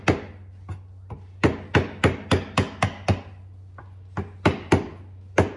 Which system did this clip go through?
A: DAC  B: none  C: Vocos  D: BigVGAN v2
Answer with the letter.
B